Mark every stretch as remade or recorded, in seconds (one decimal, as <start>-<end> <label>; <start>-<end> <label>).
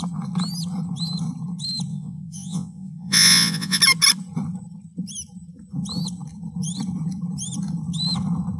0.0-1.9 recorded; 1.9-3.8 remade; 3.8-8.6 recorded